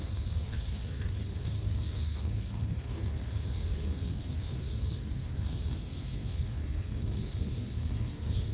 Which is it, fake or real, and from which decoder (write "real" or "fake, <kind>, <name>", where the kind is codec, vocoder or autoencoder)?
fake, codec, SNAC